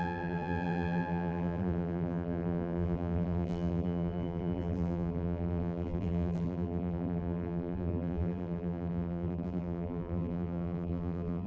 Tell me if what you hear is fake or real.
fake